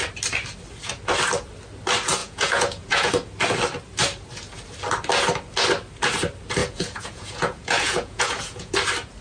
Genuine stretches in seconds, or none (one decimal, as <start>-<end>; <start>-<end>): 0.0-2.2; 3.1-6.6; 8.7-9.2